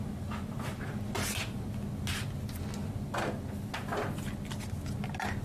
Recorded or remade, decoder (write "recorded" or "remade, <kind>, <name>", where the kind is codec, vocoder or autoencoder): recorded